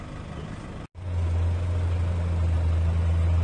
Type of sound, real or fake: real